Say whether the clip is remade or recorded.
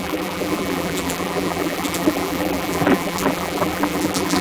remade